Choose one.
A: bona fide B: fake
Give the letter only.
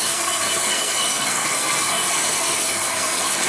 B